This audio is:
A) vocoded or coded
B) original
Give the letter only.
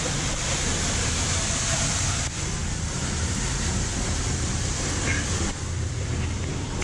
A